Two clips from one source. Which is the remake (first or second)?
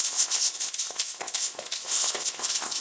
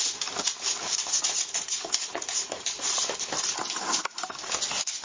first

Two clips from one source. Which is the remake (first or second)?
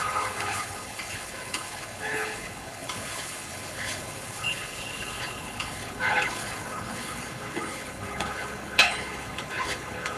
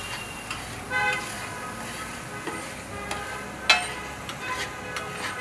first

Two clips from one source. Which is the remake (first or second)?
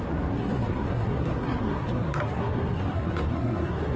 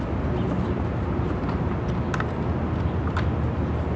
first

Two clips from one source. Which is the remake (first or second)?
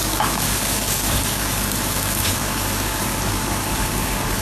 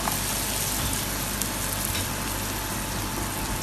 first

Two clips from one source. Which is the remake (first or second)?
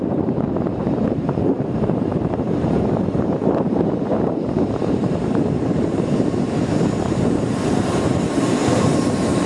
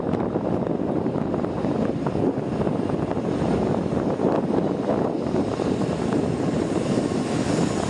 first